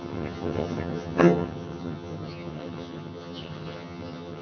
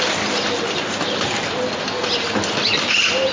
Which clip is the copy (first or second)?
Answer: first